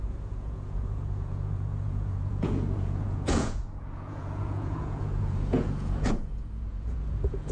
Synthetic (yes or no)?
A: yes